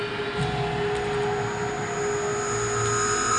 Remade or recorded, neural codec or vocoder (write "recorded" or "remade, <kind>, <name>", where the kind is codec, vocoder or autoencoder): recorded